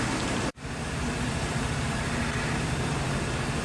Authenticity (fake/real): real